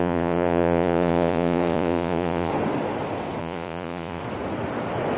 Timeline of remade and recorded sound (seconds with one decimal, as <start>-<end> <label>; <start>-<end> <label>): 0.0-2.5 remade; 2.5-3.4 recorded; 3.4-4.2 remade; 4.2-5.2 recorded